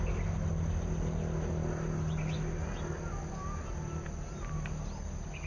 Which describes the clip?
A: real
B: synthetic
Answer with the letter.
A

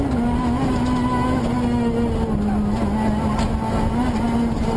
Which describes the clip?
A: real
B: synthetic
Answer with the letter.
A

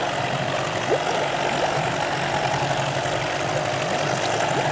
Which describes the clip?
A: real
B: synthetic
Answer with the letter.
A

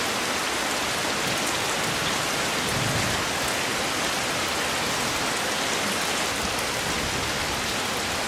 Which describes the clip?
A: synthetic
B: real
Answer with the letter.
B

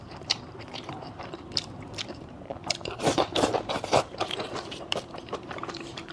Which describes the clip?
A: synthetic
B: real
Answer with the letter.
A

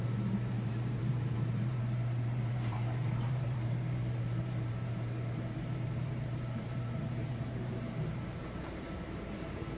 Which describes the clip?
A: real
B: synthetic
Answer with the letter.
B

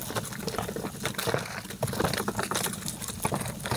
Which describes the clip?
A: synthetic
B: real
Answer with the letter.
B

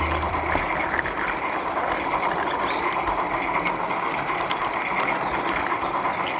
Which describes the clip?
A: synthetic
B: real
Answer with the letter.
B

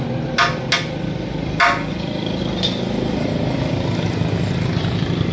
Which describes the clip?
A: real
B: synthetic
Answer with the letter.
A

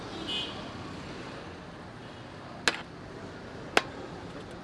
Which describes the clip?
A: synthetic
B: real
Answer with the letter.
B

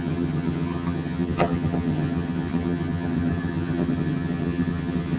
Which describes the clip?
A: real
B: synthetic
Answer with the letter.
B